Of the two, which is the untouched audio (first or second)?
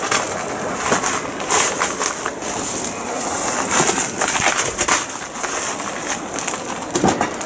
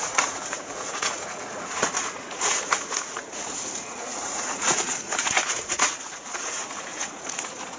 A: first